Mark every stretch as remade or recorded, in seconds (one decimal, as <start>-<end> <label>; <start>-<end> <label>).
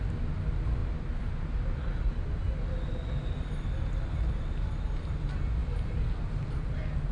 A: 0.0-7.1 recorded